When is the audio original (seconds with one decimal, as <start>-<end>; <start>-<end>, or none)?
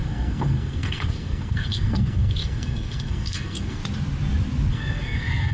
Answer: 3.8-4.7